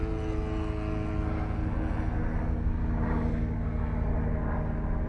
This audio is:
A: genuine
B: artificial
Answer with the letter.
A